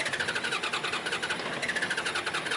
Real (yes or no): yes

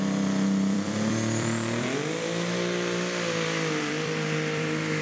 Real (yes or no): no